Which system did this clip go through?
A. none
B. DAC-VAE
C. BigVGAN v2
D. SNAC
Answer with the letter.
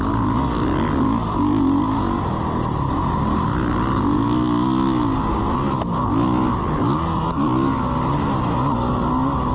A